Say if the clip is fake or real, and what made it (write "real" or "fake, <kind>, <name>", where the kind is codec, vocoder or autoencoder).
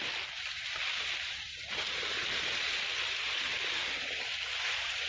real